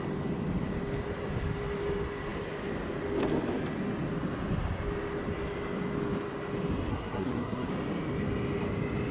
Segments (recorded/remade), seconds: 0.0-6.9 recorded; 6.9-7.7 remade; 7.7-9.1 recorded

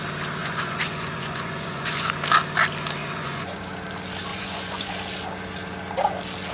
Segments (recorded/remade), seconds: 0.0-0.4 recorded; 0.4-2.1 remade; 2.1-3.0 recorded; 3.0-3.6 remade; 3.6-4.3 recorded; 4.3-4.9 remade; 4.9-6.5 recorded

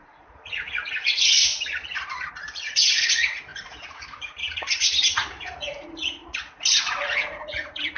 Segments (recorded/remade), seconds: 0.0-1.5 remade; 1.5-2.3 recorded; 2.3-8.0 remade